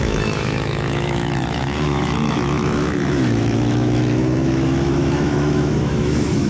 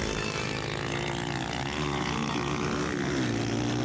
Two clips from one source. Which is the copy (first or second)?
first